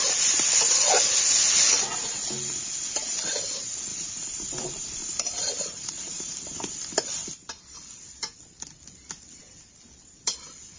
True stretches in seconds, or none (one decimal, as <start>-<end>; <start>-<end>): 0.0-3.9; 4.5-5.0; 6.3-10.8